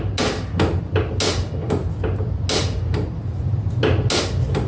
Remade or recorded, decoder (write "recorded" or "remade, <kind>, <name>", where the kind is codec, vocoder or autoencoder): recorded